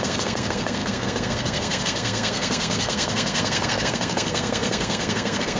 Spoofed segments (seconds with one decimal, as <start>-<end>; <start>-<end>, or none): 0.0-5.6